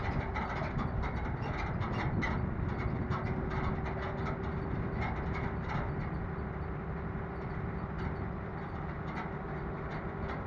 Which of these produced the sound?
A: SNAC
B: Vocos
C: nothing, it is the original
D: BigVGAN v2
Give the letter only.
C